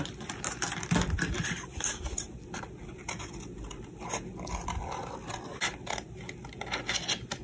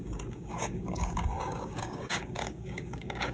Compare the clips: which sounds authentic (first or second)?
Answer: first